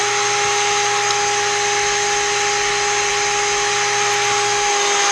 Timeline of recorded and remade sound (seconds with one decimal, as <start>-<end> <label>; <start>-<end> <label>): 0.0-5.1 recorded